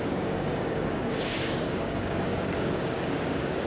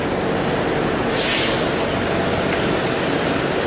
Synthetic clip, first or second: first